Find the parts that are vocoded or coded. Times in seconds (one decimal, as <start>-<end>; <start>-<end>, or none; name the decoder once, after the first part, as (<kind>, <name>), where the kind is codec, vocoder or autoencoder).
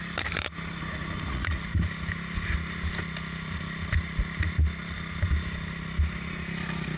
1.3-1.8 (vocoder, Vocos)